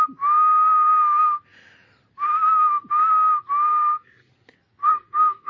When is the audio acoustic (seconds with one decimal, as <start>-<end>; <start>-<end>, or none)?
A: 0.0-3.7; 4.3-4.8